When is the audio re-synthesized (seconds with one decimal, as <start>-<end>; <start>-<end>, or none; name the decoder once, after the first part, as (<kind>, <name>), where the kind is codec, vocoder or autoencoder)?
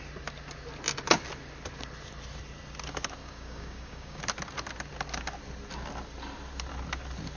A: 3.2-4.2 (codec, DAC)